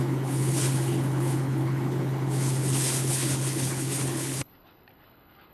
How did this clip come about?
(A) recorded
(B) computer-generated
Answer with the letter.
B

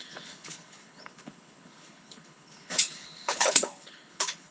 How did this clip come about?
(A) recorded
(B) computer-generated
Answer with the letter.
B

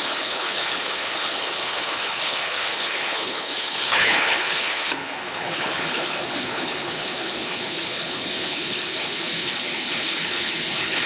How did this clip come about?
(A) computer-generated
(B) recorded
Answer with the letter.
A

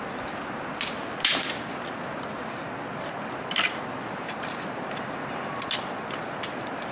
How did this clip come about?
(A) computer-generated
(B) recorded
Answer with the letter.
B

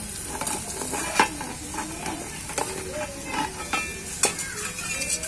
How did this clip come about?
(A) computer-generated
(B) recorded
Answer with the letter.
B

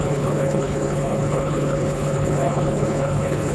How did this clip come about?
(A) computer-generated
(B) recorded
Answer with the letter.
A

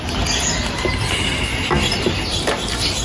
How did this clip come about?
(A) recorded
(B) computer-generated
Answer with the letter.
A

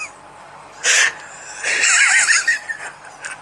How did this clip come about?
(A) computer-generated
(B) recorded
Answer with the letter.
B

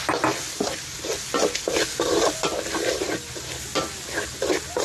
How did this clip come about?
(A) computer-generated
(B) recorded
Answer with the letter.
B